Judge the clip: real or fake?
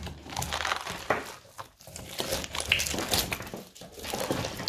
real